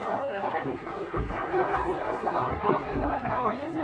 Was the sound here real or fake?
fake